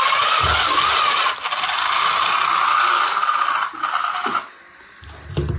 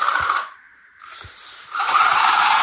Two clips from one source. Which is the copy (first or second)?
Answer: second